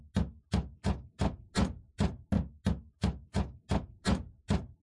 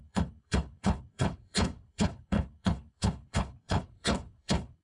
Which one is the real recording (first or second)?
first